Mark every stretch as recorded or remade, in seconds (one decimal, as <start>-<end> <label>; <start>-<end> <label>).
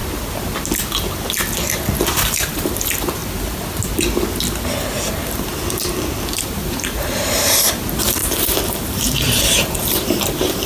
0.0-2.1 recorded; 2.1-3.2 remade; 3.2-5.1 recorded; 5.1-5.5 remade; 5.5-6.3 recorded; 6.3-10.7 remade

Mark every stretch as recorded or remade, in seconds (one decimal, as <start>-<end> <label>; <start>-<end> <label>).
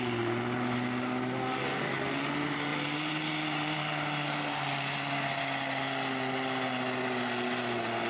0.0-2.7 recorded; 2.7-5.4 remade; 5.4-8.1 recorded